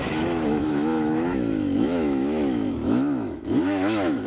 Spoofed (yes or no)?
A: yes